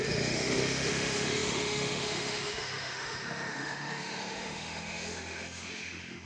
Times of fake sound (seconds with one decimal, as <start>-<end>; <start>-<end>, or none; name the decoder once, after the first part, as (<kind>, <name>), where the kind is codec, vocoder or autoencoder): 0.0-6.3 (autoencoder, DAC-VAE)